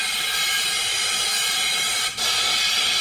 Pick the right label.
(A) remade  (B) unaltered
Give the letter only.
B